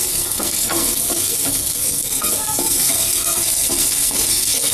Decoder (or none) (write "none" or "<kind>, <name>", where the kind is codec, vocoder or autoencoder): codec, SNAC